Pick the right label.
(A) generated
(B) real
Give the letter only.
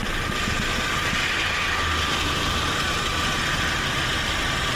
B